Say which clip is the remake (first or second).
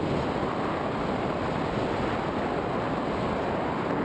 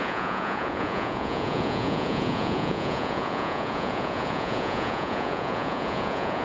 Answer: second